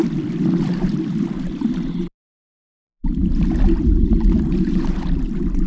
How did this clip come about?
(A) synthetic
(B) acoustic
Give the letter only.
A